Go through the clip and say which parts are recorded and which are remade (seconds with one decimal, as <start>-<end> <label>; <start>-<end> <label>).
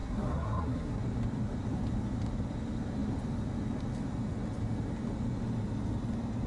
0.0-1.0 remade; 1.0-6.5 recorded